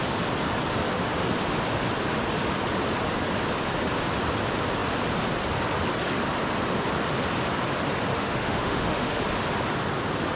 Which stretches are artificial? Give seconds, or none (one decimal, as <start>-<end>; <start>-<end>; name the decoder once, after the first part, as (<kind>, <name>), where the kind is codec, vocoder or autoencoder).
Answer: 8.1-9.2 (autoencoder, DAC-VAE)